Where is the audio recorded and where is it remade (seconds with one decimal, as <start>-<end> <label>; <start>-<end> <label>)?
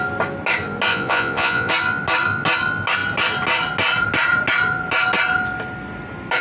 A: 0.0-0.9 recorded; 0.9-1.7 remade; 1.7-6.4 recorded